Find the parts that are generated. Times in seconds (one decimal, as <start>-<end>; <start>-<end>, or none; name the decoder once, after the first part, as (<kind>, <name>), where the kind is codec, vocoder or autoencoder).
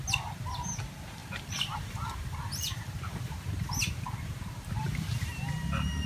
1.2-4.7 (vocoder, BigVGAN v2)